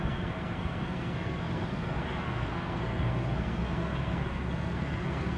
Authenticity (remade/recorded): remade